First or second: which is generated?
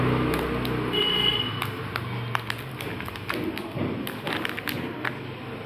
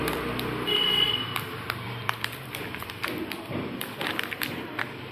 second